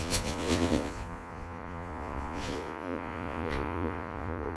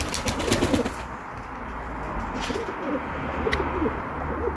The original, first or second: second